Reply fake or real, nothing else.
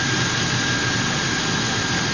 real